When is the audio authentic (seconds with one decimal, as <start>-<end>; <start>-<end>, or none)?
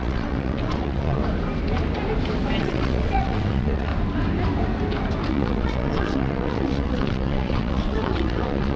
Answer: 1.2-2.6; 3.9-5.3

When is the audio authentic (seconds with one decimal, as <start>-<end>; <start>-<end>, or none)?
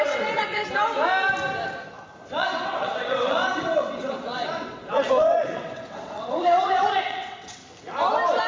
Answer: 0.6-2.3; 7.6-8.5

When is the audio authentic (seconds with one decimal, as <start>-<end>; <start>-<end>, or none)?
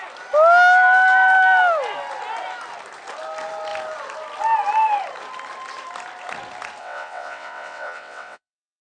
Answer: 0.0-6.8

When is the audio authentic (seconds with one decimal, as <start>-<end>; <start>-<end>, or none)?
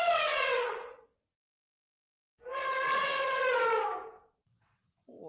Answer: 1.6-3.0; 3.4-4.3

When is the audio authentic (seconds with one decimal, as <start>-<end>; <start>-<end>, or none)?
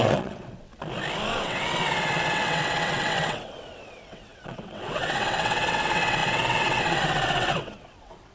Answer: 0.7-1.4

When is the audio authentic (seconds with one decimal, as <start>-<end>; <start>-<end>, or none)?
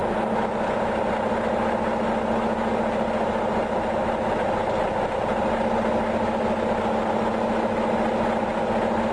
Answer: 0.0-9.1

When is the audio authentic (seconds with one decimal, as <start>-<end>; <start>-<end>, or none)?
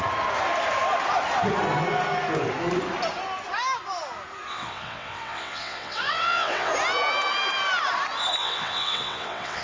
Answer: 0.0-4.5; 6.7-8.4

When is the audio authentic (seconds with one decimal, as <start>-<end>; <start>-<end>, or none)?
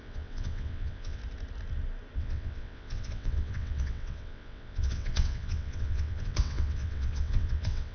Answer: 1.2-2.2